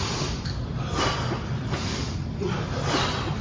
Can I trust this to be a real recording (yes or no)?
yes